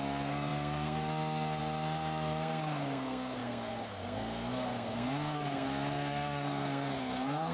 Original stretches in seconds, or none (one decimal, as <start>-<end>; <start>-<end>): none